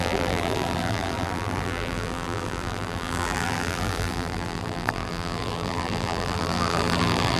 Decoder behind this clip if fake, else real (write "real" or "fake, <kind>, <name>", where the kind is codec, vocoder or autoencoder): fake, vocoder, BigVGAN v2